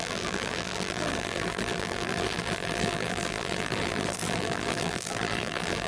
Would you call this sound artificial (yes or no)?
yes